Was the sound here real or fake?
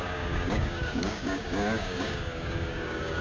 fake